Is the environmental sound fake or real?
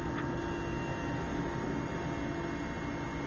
real